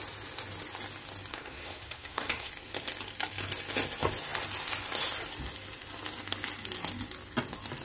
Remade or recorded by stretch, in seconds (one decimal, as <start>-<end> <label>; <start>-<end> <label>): 0.0-1.3 recorded; 1.3-2.5 remade; 2.5-7.8 recorded